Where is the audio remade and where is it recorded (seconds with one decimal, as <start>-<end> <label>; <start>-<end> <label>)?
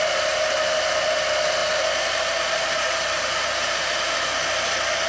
0.0-5.1 recorded